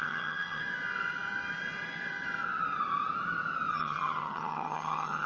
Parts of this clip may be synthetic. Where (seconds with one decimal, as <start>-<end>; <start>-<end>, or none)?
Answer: 0.0-0.6; 3.7-5.3